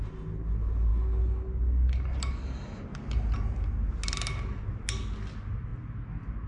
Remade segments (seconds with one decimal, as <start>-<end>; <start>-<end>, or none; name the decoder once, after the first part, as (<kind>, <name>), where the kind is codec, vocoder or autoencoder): none